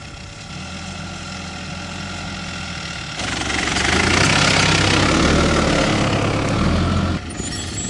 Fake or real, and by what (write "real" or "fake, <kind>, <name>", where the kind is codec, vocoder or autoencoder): real